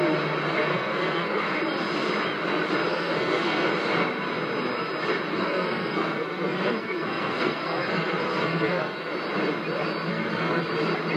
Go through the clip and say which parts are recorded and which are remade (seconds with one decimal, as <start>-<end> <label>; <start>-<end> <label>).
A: 0.0-0.7 recorded; 0.7-1.6 remade; 1.6-2.9 recorded; 2.9-3.7 remade; 3.7-5.3 recorded; 5.3-9.1 remade; 9.1-10.1 recorded; 10.1-10.6 remade; 10.6-11.2 recorded